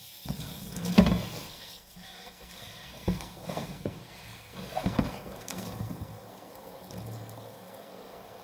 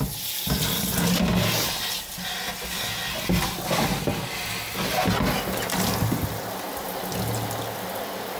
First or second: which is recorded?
second